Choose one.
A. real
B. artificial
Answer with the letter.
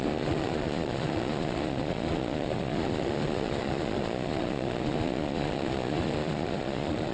B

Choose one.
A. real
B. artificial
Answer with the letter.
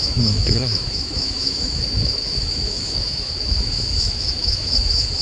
B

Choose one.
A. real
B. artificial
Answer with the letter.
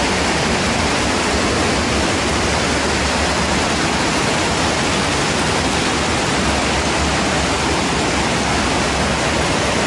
A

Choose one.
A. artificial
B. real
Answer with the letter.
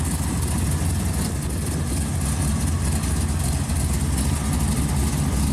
B